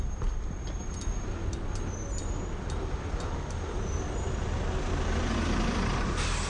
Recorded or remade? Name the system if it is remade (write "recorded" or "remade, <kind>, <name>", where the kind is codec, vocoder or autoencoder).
recorded